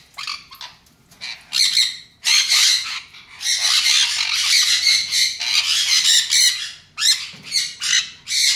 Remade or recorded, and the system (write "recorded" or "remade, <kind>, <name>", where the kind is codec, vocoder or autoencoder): recorded